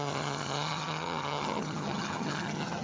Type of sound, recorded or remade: remade